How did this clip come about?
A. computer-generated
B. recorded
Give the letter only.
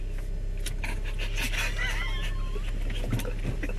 B